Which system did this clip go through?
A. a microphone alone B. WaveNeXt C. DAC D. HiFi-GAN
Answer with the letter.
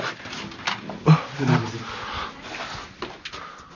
A